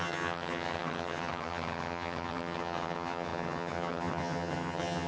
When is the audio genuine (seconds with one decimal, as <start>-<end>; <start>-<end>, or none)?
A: none